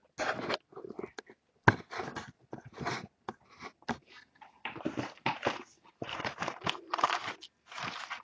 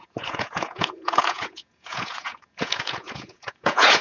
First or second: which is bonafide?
first